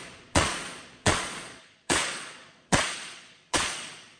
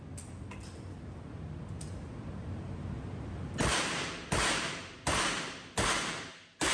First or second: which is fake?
first